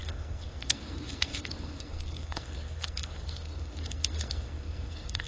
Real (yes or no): no